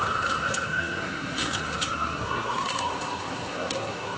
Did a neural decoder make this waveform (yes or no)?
yes